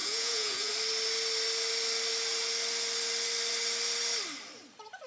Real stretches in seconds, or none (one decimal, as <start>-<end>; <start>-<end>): 0.7-5.1